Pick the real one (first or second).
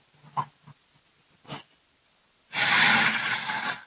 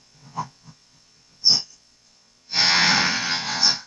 first